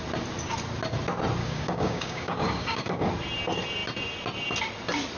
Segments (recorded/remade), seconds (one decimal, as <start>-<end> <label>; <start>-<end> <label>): 0.0-1.4 recorded; 1.4-3.1 remade; 3.1-5.2 recorded